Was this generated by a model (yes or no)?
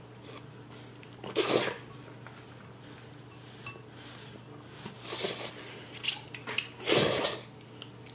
no